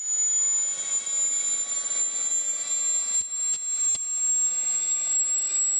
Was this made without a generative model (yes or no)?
yes